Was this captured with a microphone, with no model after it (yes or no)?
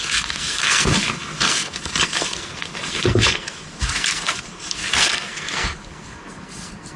no